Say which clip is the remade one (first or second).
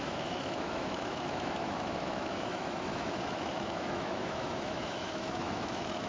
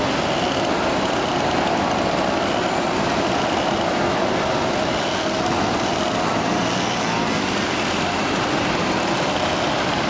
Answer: first